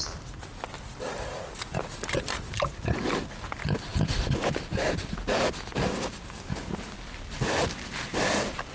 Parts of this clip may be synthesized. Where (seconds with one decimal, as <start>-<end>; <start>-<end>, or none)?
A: none